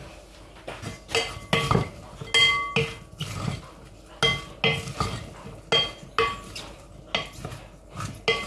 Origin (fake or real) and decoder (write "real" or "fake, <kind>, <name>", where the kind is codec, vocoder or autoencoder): real